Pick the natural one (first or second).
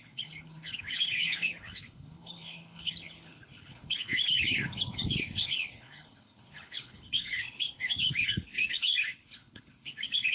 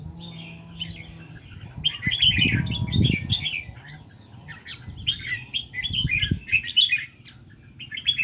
second